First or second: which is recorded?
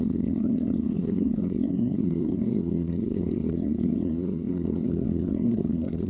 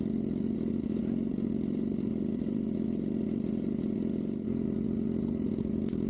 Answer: second